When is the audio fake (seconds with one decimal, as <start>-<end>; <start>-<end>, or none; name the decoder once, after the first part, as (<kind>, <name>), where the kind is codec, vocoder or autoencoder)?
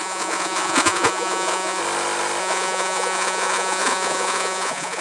0.0-1.8 (vocoder, Vocos); 2.4-5.0